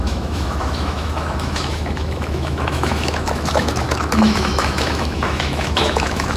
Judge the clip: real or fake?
fake